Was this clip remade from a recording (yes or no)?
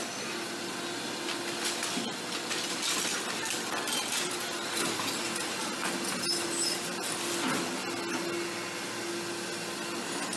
no